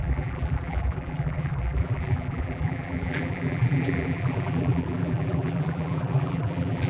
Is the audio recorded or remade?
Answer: remade